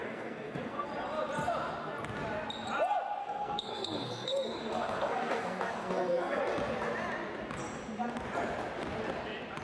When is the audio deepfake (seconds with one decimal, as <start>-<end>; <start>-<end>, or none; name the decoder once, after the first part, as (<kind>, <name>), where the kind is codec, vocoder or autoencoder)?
0.0-0.9 (codec, SNAC); 3.2-6.4